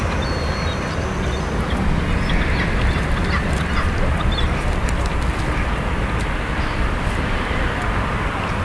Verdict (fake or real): real